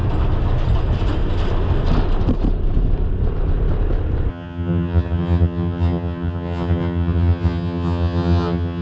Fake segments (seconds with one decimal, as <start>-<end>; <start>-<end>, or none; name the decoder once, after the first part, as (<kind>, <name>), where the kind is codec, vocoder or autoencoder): 4.3-8.8 (vocoder, HiFi-GAN)